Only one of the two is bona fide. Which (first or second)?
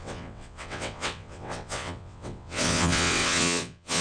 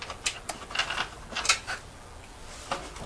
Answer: second